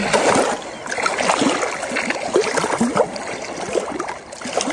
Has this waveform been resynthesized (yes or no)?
no